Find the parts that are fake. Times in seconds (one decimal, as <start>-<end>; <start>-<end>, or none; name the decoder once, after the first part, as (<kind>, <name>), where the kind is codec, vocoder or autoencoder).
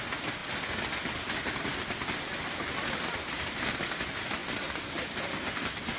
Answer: 4.4-6.0 (vocoder, BigVGAN v2)